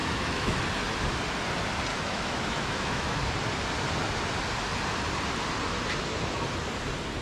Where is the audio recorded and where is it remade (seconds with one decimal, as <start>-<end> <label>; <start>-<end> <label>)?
0.0-0.6 remade; 0.6-1.9 recorded; 1.9-3.3 remade; 3.3-7.2 recorded